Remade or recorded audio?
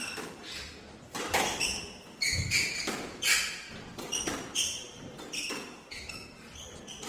recorded